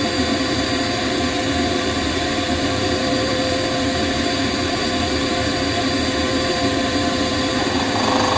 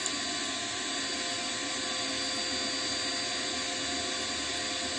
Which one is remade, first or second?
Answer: first